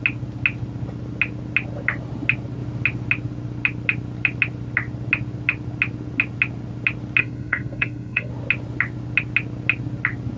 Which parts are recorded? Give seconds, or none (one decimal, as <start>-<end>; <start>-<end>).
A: 0.0-7.2; 8.3-10.4